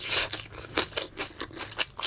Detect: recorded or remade recorded